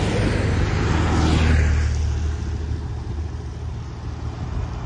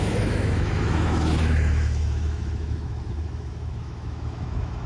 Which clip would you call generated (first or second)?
second